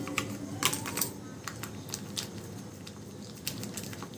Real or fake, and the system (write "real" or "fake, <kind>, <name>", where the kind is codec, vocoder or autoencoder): real